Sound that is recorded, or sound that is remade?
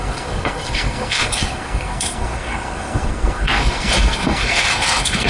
remade